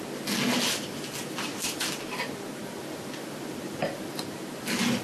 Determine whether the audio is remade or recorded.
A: recorded